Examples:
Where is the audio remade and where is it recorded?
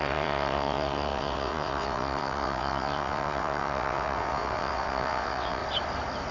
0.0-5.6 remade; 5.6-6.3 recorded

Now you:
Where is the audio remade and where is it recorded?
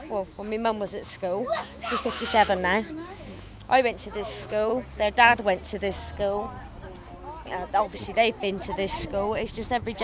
0.0-4.7 remade; 4.7-9.5 recorded; 9.5-10.0 remade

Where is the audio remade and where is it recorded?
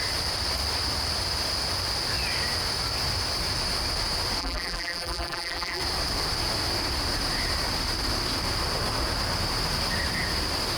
0.0-4.4 recorded; 4.4-5.8 remade; 5.8-10.8 recorded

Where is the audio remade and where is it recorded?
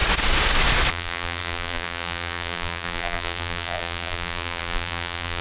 0.0-0.9 recorded; 0.9-5.4 remade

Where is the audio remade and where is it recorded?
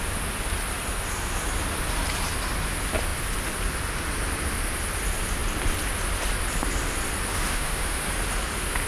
0.0-7.3 recorded; 7.3-8.1 remade; 8.1-8.9 recorded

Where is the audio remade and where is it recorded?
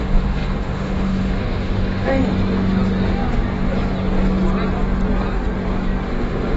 0.0-2.1 remade; 2.1-6.1 recorded; 6.1-6.6 remade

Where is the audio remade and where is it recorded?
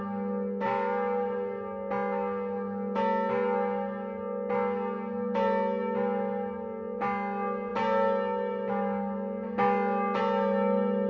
0.0-11.1 recorded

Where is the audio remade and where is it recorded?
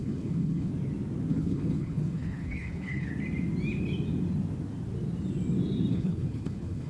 0.0-0.7 remade; 0.7-1.3 recorded; 1.3-3.1 remade; 3.1-5.9 recorded; 5.9-6.9 remade